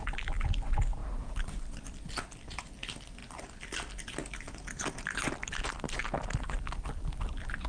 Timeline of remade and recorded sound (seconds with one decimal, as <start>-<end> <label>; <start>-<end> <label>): 0.0-6.0 recorded; 6.0-7.3 remade; 7.3-7.7 recorded